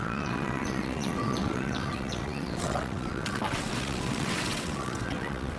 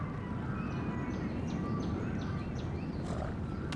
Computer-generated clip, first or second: first